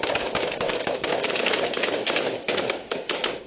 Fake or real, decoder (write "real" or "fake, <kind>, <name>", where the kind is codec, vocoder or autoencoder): fake, codec, DAC